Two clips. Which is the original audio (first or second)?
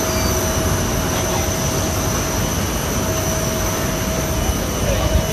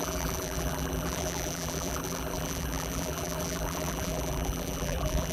first